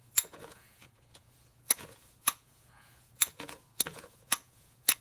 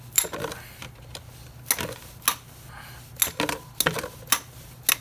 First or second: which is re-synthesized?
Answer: first